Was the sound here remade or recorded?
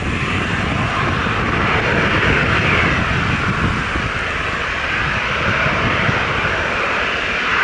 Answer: remade